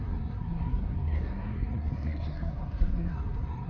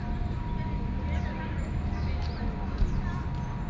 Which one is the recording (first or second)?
second